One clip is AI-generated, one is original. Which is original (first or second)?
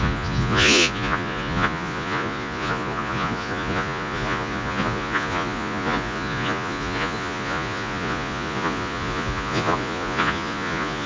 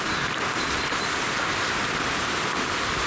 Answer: second